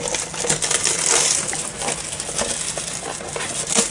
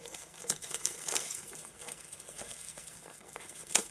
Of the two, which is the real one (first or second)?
first